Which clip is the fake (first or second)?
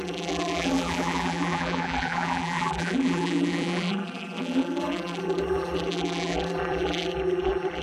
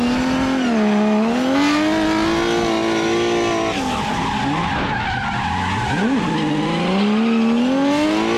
first